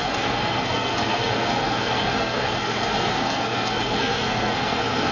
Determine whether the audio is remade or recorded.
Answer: remade